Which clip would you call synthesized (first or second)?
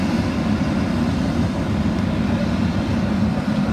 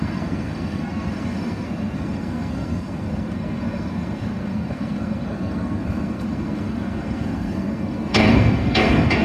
second